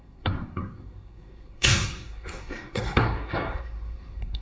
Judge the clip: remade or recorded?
remade